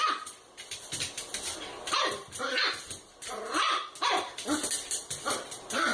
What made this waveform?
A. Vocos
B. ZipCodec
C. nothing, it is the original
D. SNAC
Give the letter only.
C